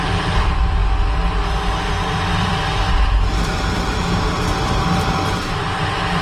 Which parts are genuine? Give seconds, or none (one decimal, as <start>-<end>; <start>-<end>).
0.8-1.9; 2.5-5.6